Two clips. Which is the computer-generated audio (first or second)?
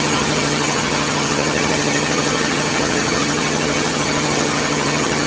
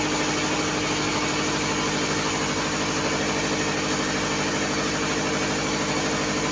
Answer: first